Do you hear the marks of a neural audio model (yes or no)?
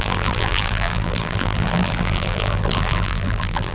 yes